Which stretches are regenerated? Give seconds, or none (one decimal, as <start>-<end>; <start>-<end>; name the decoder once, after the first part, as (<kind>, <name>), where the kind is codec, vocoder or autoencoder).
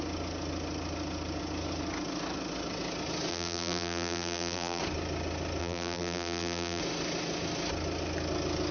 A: 3.3-4.8 (vocoder, BigVGAN v2); 5.6-6.8